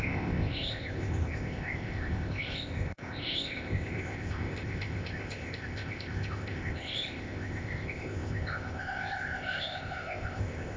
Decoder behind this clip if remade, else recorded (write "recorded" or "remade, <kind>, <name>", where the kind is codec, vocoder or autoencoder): remade, codec, ZipCodec